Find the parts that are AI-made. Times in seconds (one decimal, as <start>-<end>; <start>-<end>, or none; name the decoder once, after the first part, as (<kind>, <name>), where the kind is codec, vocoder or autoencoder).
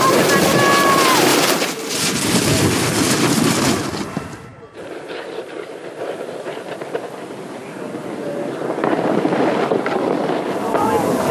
0.0-7.6 (vocoder, BigVGAN v2); 9.0-11.3